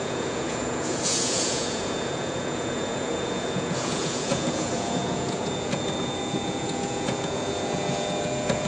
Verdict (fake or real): fake